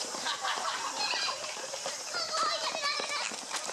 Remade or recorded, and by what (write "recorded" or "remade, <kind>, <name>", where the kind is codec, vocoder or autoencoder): recorded